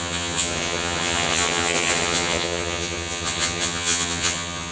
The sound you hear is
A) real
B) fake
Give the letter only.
B